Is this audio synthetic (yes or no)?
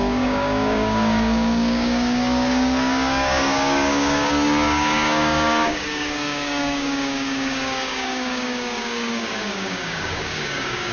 yes